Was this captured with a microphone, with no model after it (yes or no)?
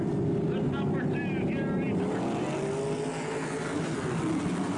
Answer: yes